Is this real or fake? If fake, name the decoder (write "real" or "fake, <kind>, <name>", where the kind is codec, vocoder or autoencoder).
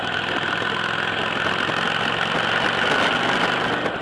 real